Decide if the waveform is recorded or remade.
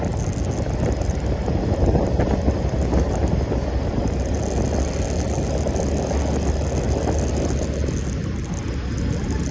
recorded